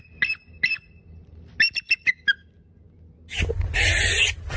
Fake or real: real